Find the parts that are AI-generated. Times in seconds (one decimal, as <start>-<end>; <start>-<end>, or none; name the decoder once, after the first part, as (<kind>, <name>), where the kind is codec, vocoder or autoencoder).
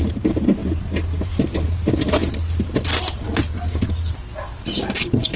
0.0-0.6 (vocoder, BigVGAN v2); 1.2-2.2; 4.8-5.4